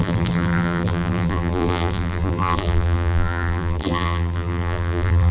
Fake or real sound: fake